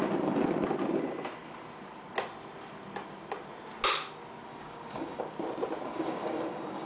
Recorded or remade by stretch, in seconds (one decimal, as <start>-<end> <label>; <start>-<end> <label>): 0.0-4.5 recorded; 4.5-5.2 remade; 5.2-5.9 recorded; 5.9-6.9 remade